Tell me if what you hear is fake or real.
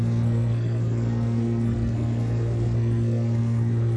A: fake